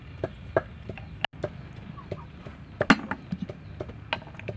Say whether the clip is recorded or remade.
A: recorded